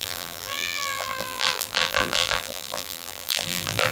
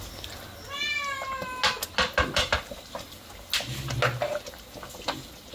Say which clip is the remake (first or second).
first